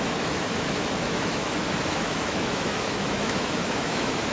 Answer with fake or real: fake